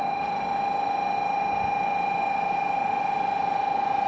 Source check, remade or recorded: recorded